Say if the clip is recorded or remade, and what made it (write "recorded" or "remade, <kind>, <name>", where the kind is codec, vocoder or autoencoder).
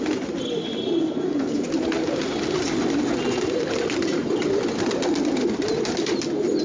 recorded